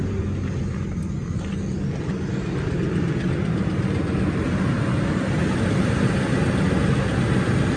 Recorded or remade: recorded